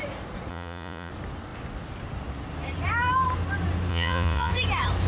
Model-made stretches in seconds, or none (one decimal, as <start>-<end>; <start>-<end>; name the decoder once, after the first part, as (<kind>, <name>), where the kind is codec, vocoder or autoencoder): 0.5-1.1 (vocoder, Vocos); 3.9-4.5